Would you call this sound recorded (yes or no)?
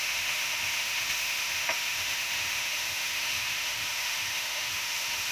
no